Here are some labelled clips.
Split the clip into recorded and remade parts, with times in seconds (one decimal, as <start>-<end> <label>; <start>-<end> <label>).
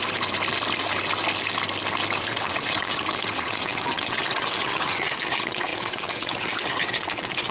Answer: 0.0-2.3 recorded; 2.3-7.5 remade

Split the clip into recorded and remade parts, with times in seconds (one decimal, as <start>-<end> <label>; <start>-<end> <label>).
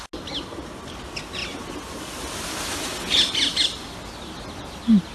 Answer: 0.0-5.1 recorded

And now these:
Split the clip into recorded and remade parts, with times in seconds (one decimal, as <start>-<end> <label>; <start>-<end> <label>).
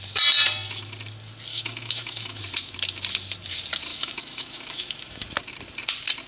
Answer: 0.0-1.5 recorded; 1.5-2.4 remade; 2.4-3.9 recorded; 3.9-5.2 remade; 5.2-6.3 recorded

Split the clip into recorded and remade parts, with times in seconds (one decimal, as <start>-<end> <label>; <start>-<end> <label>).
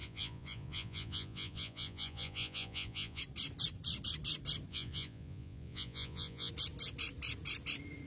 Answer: 0.0-3.2 remade; 3.2-4.7 recorded; 4.7-6.5 remade; 6.5-8.1 recorded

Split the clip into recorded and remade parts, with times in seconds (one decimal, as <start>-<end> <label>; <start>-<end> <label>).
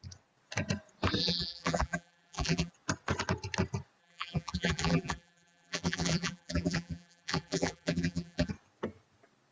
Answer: 0.0-1.2 recorded; 1.2-2.7 remade; 2.7-4.0 recorded; 4.0-8.5 remade; 8.5-9.5 recorded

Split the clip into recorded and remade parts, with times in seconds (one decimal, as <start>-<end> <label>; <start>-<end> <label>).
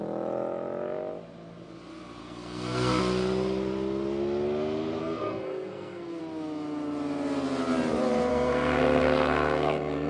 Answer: 0.0-2.2 recorded; 2.2-3.0 remade; 3.0-5.0 recorded; 5.0-6.2 remade; 6.2-8.3 recorded; 8.3-10.1 remade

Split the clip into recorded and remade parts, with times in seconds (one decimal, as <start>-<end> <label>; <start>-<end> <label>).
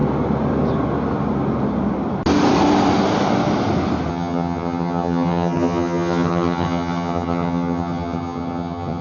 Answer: 0.0-4.1 recorded; 4.1-9.0 remade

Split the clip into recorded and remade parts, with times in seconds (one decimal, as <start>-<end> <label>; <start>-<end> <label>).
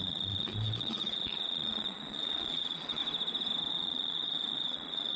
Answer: 0.0-3.0 remade; 3.0-3.7 recorded; 3.7-5.2 remade